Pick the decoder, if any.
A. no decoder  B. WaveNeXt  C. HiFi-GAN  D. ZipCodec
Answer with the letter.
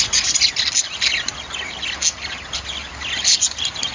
A